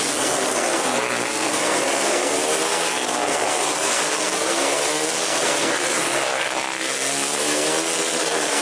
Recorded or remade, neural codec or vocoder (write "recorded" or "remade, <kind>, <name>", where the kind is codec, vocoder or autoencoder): remade, codec, SNAC